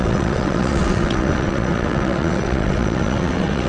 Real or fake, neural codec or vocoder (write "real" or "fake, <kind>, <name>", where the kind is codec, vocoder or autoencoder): fake, vocoder, WaveNeXt